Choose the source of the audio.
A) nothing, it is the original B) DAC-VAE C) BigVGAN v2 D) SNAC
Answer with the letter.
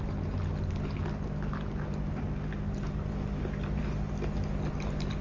A